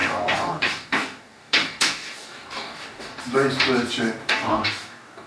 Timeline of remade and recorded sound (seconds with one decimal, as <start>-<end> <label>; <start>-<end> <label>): 0.0-3.2 remade; 3.2-4.2 recorded; 4.2-5.3 remade